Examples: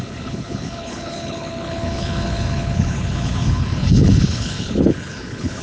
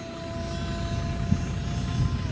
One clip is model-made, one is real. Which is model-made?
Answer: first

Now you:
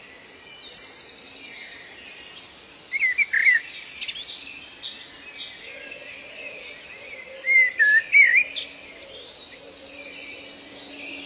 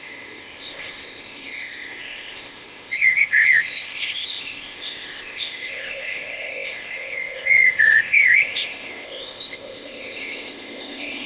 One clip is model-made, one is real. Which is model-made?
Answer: second